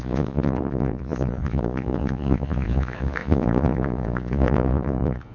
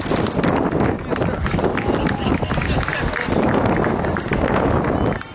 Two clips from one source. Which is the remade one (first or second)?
first